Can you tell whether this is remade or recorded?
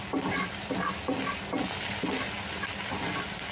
recorded